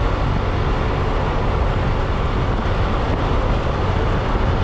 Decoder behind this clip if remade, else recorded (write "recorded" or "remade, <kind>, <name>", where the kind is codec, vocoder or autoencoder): recorded